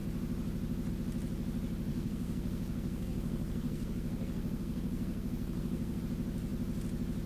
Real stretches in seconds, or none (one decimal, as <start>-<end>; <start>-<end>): 0.0-1.9; 6.0-7.3

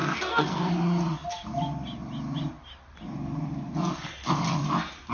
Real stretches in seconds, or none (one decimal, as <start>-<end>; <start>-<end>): 0.7-5.1

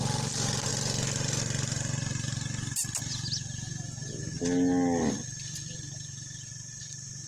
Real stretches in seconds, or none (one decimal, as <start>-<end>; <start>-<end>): 0.0-7.3

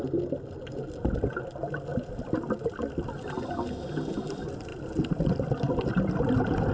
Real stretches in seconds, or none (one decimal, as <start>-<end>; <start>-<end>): 0.0-6.7

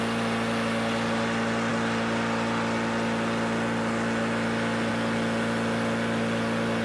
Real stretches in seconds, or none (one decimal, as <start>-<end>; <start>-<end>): 0.0-6.8

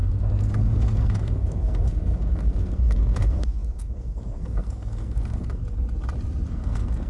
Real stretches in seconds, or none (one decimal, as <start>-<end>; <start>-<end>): 5.6-6.5

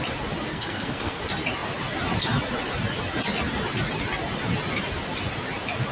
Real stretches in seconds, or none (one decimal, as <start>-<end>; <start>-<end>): 0.0-0.5; 1.2-5.9

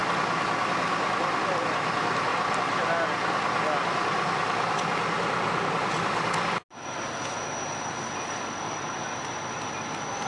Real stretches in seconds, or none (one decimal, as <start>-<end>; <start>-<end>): 0.0-10.3